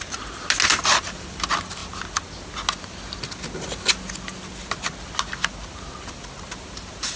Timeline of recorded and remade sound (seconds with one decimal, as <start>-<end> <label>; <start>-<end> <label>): 0.0-7.2 recorded